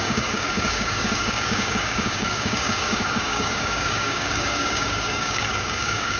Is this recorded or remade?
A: remade